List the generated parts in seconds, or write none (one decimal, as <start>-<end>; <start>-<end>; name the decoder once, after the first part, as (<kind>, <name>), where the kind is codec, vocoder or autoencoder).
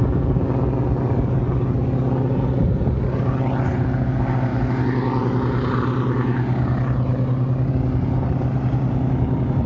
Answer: none